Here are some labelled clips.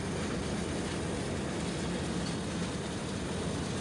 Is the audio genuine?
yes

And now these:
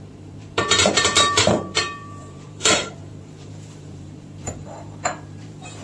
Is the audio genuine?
no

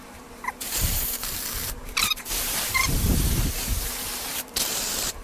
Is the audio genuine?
no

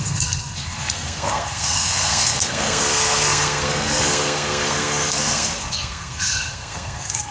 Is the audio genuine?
no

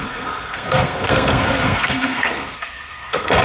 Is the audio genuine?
no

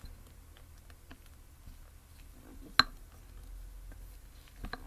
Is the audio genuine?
yes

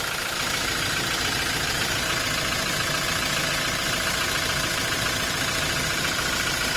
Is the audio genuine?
yes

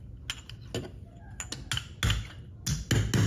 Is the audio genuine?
yes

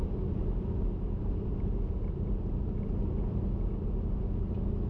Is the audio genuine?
yes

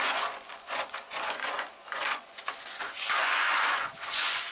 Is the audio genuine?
no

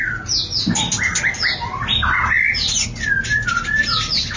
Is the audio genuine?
yes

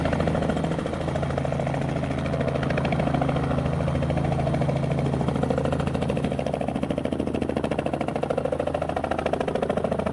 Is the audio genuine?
yes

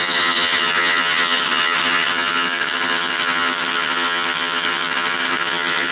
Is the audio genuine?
no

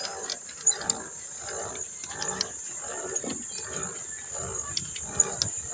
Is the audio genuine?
yes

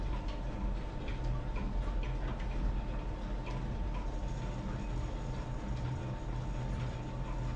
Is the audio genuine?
yes